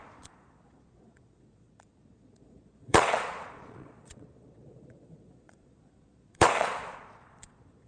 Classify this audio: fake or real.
fake